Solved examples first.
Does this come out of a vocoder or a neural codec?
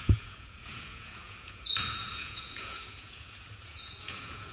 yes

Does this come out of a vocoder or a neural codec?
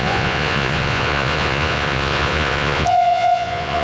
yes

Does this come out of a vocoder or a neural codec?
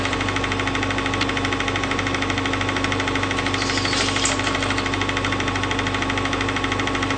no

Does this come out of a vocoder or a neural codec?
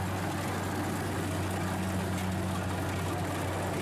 no